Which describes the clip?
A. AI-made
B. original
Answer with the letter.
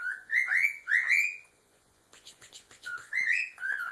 A